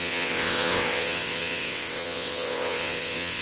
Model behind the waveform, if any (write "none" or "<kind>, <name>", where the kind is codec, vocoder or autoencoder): vocoder, WaveNeXt